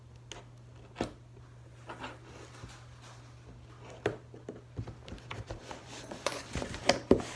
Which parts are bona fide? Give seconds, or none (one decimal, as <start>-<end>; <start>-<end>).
0.0-5.6; 6.8-7.4